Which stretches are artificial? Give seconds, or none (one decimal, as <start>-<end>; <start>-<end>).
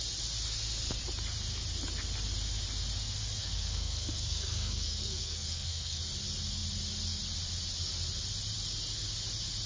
3.4-6.0